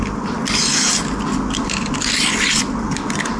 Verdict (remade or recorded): recorded